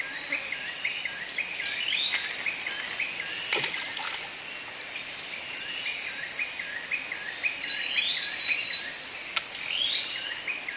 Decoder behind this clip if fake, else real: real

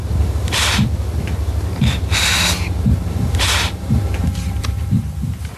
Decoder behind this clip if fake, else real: fake, vocoder, BigVGAN v2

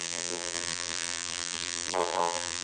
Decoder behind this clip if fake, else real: fake, vocoder, BigVGAN v2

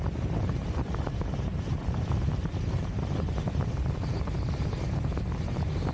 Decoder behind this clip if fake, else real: fake, vocoder, BigVGAN v2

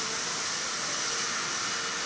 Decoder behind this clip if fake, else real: real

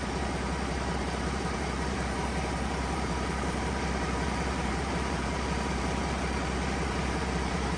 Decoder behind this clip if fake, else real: fake, vocoder, BigVGAN v2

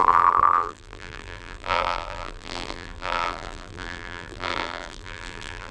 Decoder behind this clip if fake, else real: fake, vocoder, BigVGAN v2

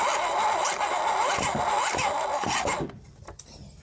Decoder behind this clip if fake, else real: real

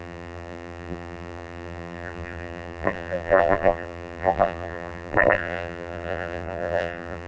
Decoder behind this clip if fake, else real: fake, vocoder, BigVGAN v2